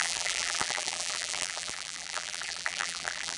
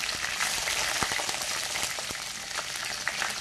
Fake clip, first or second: first